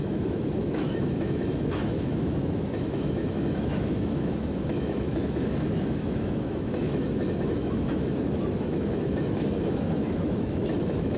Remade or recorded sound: remade